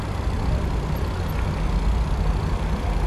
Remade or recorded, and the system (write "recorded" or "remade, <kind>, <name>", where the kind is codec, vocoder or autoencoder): recorded